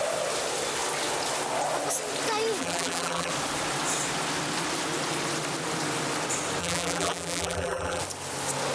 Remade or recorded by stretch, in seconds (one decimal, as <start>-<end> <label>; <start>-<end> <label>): 0.0-2.6 recorded; 2.6-3.3 remade; 3.3-6.6 recorded; 6.6-8.0 remade; 8.0-8.7 recorded

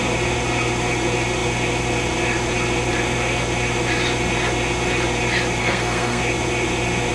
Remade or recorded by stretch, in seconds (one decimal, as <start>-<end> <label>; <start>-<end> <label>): 0.0-5.6 recorded; 5.6-6.2 remade; 6.2-7.1 recorded

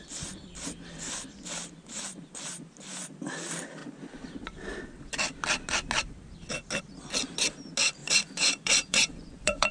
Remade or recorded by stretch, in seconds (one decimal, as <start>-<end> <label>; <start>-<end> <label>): 0.0-8.0 recorded; 8.0-9.7 remade

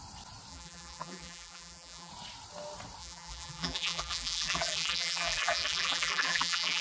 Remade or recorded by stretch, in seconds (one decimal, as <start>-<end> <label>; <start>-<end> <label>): 0.0-0.5 recorded; 0.5-2.1 remade; 2.1-3.0 recorded; 3.0-6.8 remade

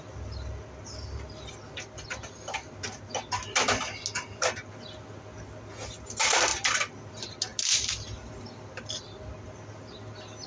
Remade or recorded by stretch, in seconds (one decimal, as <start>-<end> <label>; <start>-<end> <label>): 0.0-10.5 recorded